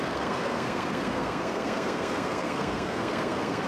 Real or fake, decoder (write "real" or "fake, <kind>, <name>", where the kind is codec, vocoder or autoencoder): fake, codec, SNAC